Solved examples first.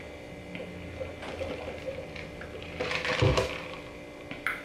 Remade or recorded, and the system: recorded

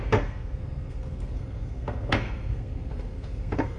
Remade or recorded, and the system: remade, codec, SNAC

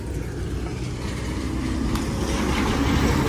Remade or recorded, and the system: recorded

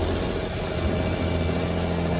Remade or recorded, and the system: recorded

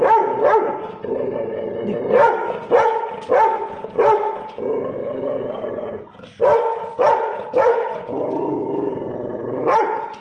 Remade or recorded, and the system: recorded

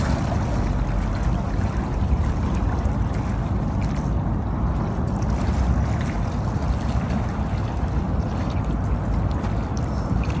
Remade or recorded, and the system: recorded